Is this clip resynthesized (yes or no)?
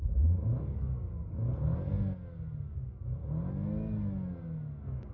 no